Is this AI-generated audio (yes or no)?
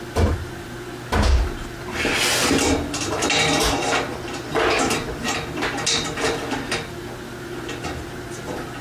no